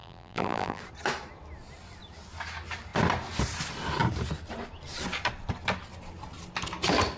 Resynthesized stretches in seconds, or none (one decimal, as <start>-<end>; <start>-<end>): 0.0-0.8